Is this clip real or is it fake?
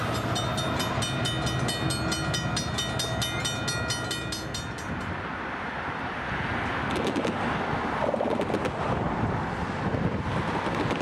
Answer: real